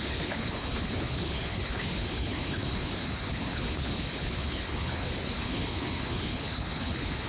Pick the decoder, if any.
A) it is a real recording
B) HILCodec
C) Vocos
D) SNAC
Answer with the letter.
B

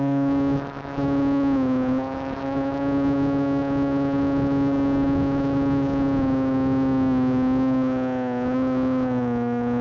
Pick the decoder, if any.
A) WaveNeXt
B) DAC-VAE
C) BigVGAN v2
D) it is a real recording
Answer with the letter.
B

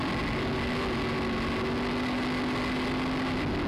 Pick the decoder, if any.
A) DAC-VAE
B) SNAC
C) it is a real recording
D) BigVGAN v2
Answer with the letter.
C